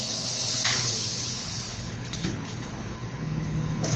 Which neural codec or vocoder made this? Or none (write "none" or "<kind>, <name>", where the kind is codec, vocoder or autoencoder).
codec, HILCodec